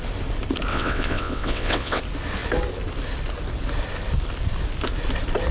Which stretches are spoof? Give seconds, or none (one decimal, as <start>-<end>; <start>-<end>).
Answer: 0.7-2.0